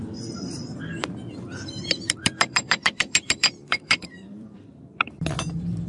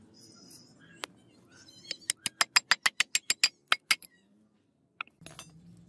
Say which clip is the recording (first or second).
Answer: second